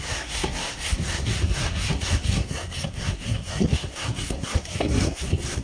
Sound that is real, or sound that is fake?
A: fake